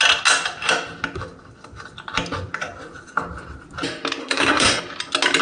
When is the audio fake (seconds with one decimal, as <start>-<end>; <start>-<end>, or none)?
4.2-4.8